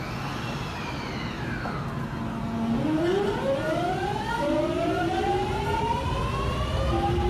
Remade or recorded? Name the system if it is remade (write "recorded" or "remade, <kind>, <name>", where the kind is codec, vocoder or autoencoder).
recorded